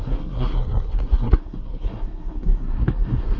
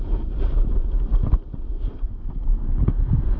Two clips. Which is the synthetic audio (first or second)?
first